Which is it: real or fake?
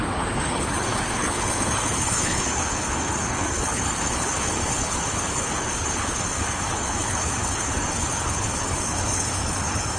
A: fake